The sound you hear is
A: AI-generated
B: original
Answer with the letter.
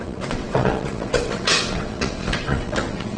A